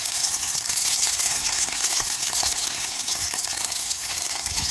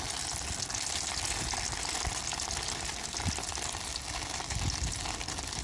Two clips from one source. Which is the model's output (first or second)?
first